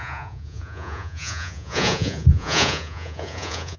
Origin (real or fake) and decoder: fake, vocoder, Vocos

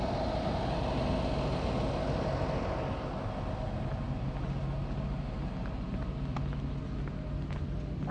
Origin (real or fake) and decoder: real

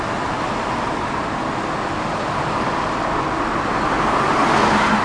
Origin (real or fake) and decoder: real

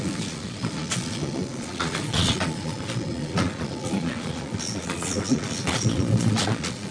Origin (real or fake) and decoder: fake, vocoder, Vocos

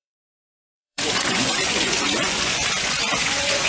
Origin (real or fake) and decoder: fake, vocoder, Vocos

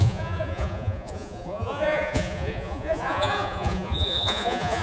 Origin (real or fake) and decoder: fake, vocoder, Vocos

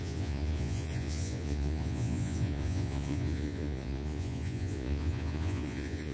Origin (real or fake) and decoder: fake, vocoder, Vocos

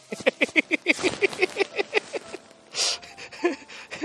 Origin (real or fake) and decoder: real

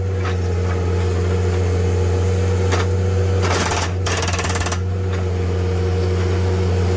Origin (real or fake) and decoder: real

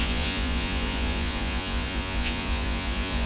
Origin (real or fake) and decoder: fake, vocoder, Vocos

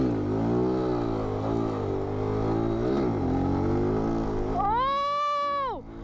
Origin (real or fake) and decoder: real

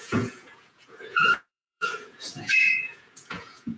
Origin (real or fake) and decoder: fake, vocoder, Vocos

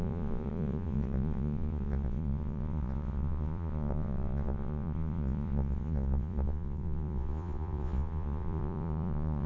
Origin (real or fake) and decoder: fake, vocoder, Vocos